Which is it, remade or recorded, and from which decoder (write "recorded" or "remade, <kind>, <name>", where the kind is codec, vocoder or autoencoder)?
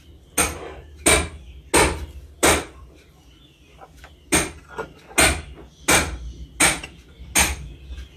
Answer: recorded